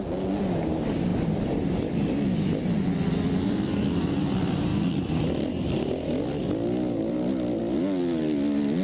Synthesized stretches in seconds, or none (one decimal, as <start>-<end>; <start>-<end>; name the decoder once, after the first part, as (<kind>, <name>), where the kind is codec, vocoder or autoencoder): none